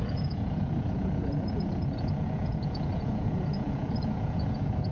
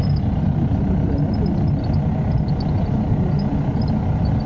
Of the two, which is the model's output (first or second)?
first